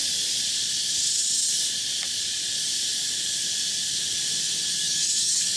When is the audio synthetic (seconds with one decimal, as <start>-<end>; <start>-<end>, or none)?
4.8-5.6